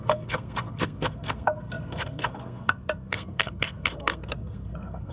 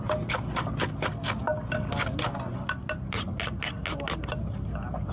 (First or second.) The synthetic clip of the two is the first